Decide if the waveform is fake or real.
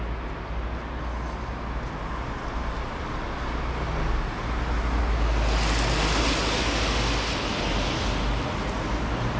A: real